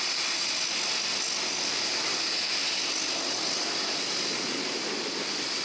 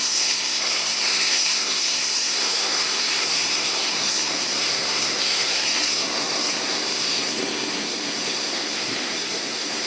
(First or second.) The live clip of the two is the first